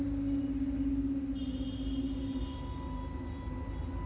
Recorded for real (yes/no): yes